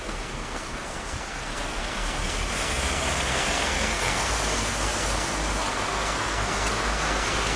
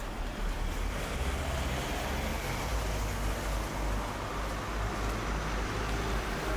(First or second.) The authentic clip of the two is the second